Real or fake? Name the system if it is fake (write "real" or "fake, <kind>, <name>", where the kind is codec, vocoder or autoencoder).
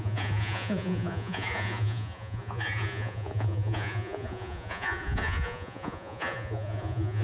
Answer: fake, vocoder, Vocos